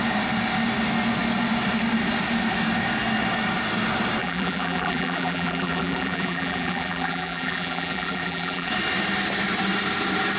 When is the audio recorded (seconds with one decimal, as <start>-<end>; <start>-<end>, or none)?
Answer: 0.0-4.2; 8.7-10.4